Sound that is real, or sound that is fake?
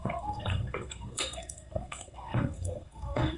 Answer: fake